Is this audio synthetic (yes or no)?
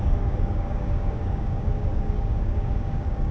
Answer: yes